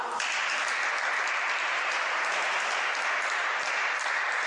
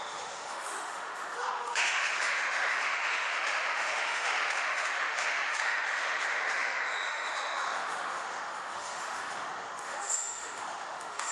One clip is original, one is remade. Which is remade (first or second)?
second